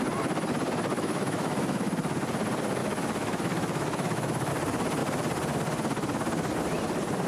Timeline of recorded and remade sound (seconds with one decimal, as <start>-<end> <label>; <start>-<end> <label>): 0.0-0.9 recorded; 0.9-1.9 remade; 1.9-2.8 recorded; 2.8-4.5 remade; 4.5-7.3 recorded